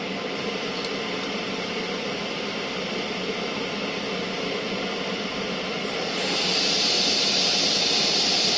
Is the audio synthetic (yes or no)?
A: no